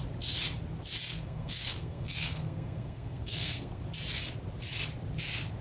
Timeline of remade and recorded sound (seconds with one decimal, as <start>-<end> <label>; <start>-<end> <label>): 0.0-1.1 recorded; 1.1-3.8 remade; 3.8-5.6 recorded